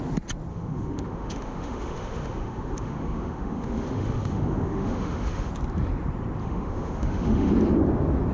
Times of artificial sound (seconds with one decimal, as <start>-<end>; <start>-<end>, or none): 0.5-5.5; 6.4-7.5